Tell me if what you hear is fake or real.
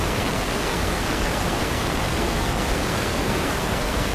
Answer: fake